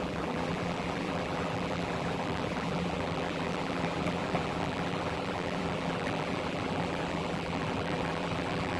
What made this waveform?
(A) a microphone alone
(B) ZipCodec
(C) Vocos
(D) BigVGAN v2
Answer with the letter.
D